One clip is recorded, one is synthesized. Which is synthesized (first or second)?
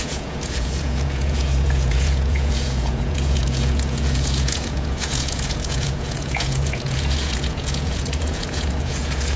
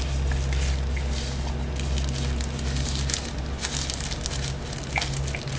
first